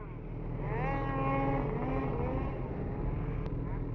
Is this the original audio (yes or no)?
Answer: yes